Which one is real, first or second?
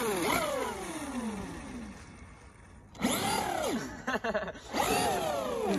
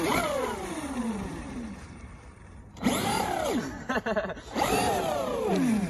first